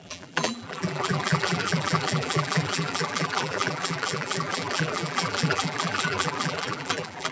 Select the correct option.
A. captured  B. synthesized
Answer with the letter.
B